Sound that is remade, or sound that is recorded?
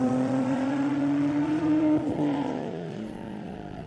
remade